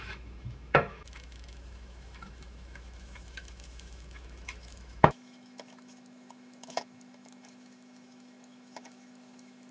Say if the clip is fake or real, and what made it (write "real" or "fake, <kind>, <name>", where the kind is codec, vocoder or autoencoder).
fake, autoencoder, DAC-VAE